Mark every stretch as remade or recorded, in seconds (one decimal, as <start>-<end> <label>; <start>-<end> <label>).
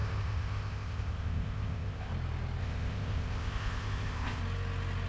0.0-2.1 remade; 2.1-2.6 recorded; 2.6-4.4 remade; 4.4-5.1 recorded